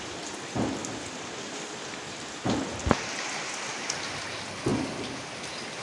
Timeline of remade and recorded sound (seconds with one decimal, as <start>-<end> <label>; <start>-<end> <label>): 0.0-5.8 recorded